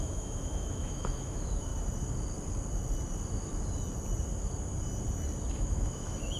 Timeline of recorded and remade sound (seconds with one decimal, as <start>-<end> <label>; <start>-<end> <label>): 0.0-1.7 remade; 1.7-5.5 recorded; 5.5-6.4 remade